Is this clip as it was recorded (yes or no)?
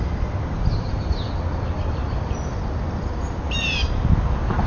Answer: yes